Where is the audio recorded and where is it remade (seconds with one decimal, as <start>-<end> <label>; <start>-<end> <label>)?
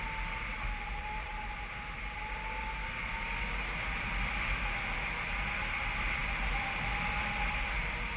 0.0-8.2 recorded